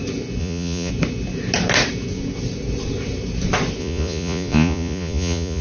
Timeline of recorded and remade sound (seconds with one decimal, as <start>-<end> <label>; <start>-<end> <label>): 0.0-0.4 recorded; 0.4-0.9 remade; 0.9-3.8 recorded; 3.8-5.6 remade